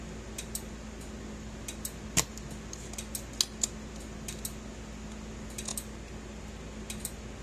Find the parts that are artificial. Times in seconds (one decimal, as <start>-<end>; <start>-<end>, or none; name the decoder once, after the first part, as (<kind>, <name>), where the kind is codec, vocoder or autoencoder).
none